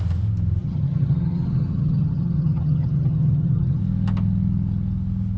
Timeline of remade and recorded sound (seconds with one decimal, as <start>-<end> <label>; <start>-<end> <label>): 0.0-0.6 recorded; 0.6-3.8 remade; 3.8-5.4 recorded